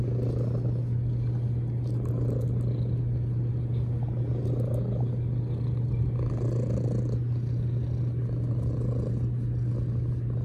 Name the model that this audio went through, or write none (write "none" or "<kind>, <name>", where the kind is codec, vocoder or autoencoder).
none